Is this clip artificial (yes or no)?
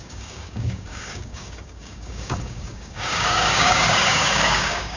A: yes